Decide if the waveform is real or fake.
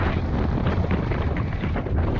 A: real